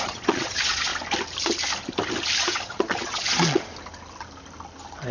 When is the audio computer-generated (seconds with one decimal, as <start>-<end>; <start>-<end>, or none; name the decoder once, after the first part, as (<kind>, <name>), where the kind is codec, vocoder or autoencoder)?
0.0-0.9 (vocoder, Vocos); 2.4-3.7